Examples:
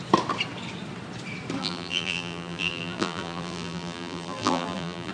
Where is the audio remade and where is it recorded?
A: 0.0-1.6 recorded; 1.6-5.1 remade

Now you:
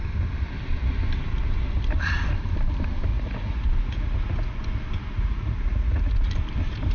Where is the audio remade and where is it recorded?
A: 0.0-3.1 recorded; 3.1-4.6 remade; 4.6-5.1 recorded; 5.1-6.3 remade; 6.3-6.9 recorded

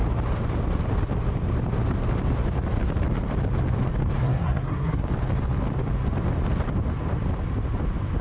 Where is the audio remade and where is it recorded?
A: 0.0-4.2 recorded; 4.2-5.0 remade; 5.0-8.2 recorded

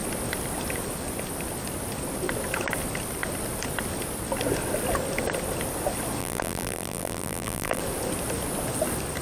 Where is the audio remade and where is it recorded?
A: 0.0-6.2 recorded; 6.2-7.8 remade; 7.8-9.2 recorded

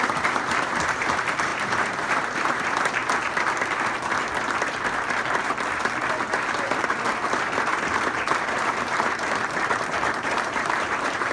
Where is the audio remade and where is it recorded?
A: 0.0-3.0 remade; 3.0-6.3 recorded; 6.3-11.3 remade

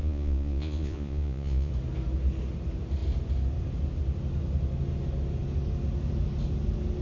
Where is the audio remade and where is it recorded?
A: 0.0-1.7 remade; 1.7-7.0 recorded

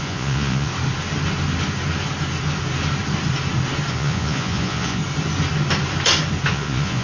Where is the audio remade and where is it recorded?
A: 0.0-0.7 remade; 0.7-3.9 recorded; 3.9-5.0 remade; 5.0-6.5 recorded; 6.5-7.0 remade

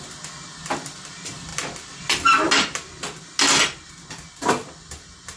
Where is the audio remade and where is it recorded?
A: 0.0-5.4 recorded